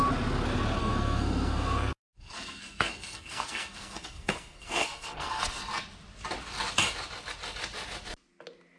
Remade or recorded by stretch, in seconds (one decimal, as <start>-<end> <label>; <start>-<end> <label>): 0.0-0.8 recorded; 0.8-5.4 remade; 5.4-8.8 recorded